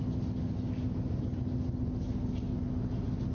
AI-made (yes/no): no